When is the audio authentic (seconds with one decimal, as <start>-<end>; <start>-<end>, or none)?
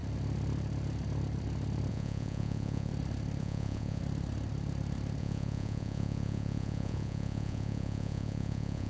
0.0-1.9; 2.9-3.4; 4.0-5.2